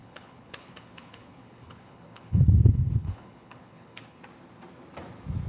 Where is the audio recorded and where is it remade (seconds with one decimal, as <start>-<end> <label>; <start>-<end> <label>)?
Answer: 0.0-4.2 remade; 4.2-5.5 recorded